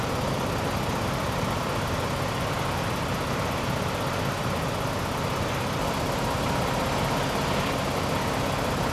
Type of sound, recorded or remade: recorded